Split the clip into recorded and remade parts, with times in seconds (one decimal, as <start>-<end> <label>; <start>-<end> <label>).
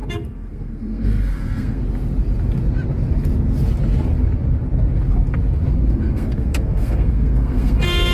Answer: 0.0-1.8 remade; 1.8-5.9 recorded; 5.9-8.1 remade